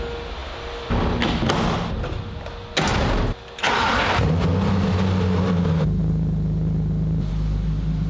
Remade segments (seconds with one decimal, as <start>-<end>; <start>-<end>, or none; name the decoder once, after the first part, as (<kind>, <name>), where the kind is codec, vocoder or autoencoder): none